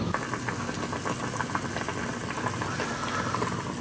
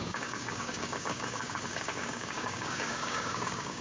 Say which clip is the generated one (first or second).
second